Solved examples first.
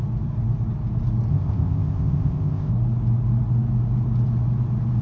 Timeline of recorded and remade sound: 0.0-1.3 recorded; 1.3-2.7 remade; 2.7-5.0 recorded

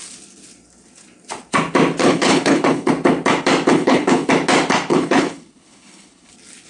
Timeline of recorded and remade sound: 0.0-2.0 recorded; 2.0-2.9 remade; 2.9-3.7 recorded; 3.7-4.3 remade; 4.3-4.9 recorded; 4.9-6.3 remade; 6.3-6.7 recorded

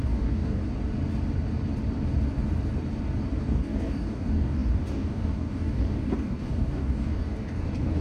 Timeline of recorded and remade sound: 0.0-0.6 remade; 0.6-3.4 recorded; 3.4-8.0 remade

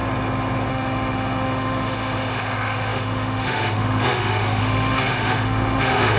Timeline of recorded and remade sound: 0.0-0.7 recorded; 0.7-6.2 remade

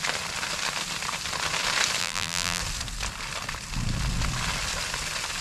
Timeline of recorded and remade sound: 0.0-2.0 recorded; 2.0-2.6 remade; 2.6-5.4 recorded

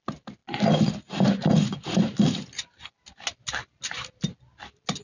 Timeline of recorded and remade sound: 0.0-5.0 recorded